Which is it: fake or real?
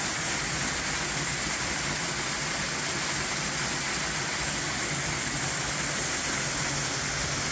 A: real